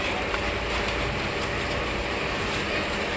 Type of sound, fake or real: real